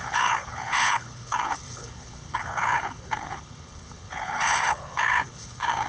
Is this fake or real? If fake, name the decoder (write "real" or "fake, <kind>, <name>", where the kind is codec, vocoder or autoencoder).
fake, codec, HILCodec